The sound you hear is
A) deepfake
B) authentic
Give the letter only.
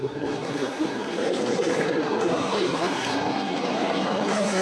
A